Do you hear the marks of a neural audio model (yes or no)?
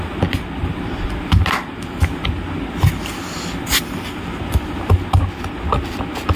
no